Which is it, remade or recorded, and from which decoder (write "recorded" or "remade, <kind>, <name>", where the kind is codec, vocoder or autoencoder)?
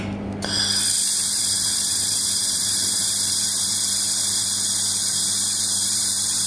remade, vocoder, BigVGAN v2